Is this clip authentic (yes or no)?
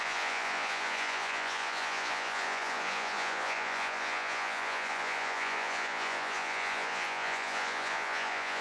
no